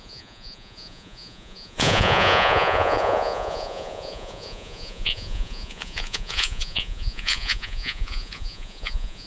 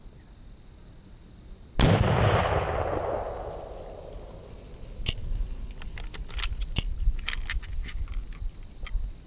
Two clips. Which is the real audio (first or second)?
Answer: second